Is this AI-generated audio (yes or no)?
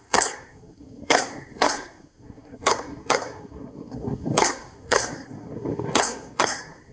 yes